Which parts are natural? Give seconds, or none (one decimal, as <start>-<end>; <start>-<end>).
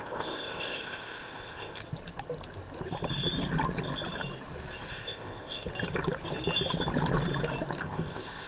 1.8-4.9; 5.7-7.8